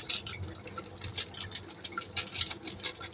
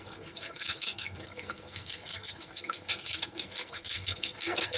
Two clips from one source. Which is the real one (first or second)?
first